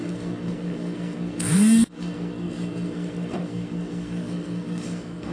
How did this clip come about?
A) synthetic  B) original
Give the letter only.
A